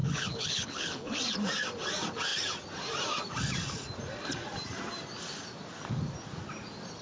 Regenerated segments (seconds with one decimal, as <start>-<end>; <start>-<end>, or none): 0.0-1.2